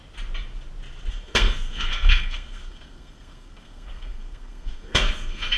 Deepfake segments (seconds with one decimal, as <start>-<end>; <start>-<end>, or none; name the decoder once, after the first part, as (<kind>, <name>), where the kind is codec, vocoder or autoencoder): 1.1-5.6 (codec, SNAC)